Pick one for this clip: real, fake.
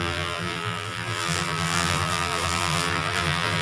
fake